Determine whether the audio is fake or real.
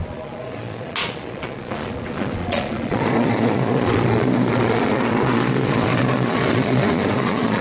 fake